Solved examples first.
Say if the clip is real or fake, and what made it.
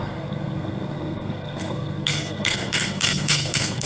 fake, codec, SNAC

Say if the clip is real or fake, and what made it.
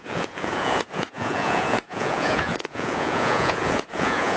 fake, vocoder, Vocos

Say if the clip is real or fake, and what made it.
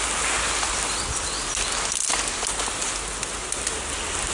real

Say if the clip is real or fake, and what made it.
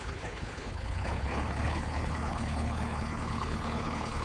fake, codec, HILCodec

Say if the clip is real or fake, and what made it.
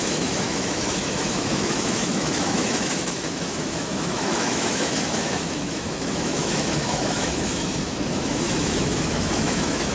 fake, autoencoder, DAC-VAE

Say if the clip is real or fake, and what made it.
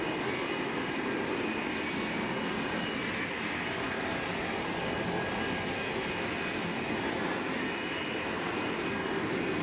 real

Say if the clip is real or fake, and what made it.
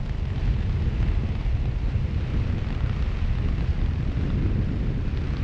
real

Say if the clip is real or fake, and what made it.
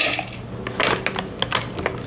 real